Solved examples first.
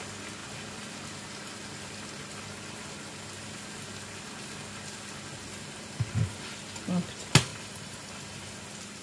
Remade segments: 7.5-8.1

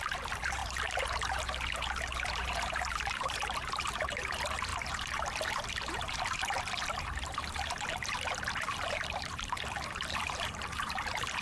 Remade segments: 0.0-11.4

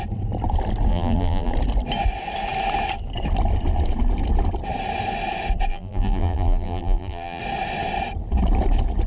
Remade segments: 0.9-1.5; 5.7-7.4